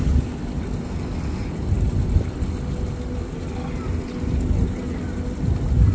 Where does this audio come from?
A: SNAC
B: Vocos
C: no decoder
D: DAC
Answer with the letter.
C